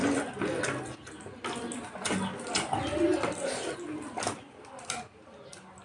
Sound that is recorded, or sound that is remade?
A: recorded